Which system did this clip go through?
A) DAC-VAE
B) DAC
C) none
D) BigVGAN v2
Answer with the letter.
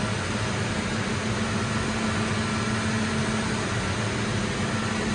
C